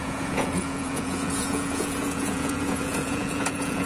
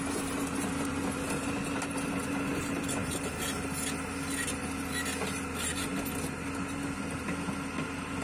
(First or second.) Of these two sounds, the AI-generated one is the first